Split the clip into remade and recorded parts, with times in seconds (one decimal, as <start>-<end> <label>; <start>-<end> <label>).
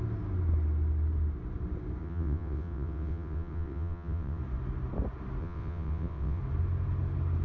0.0-2.0 recorded; 2.0-4.4 remade; 4.4-5.4 recorded; 5.4-6.4 remade; 6.4-7.4 recorded